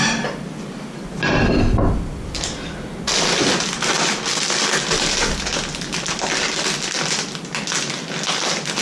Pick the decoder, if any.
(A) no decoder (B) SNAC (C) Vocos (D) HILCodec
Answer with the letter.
A